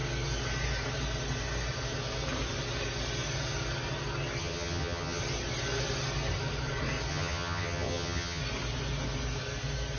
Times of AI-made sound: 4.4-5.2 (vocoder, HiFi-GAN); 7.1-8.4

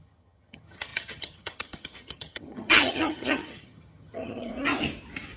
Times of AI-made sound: 0.0-4.5 (vocoder, HiFi-GAN)

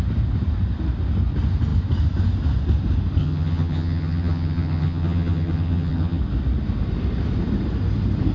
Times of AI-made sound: 3.2-6.2 (vocoder, HiFi-GAN)

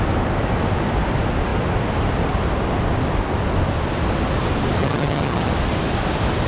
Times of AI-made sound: 4.8-5.5 (vocoder, HiFi-GAN)

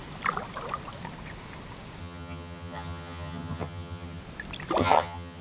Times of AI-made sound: 2.0-4.2 (vocoder, HiFi-GAN); 4.8-5.4